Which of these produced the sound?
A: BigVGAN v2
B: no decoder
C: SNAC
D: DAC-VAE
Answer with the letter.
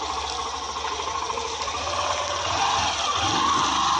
B